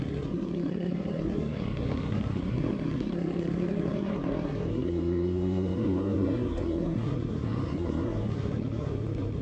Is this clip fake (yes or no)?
yes